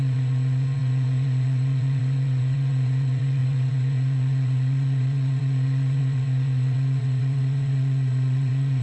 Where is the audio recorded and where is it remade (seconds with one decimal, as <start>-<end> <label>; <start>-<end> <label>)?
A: 0.0-8.8 remade